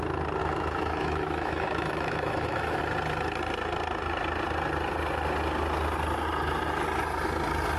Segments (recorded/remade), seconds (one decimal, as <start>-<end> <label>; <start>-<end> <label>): 0.0-0.4 recorded; 0.4-2.8 remade; 2.8-7.8 recorded